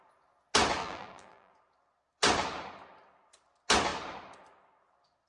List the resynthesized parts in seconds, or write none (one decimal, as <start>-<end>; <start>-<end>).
0.8-1.5